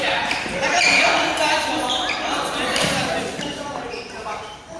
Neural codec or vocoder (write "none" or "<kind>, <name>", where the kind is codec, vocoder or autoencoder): vocoder, BigVGAN v2